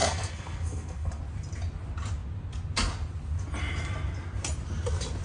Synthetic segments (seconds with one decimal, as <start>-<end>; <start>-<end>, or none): 0.0-1.2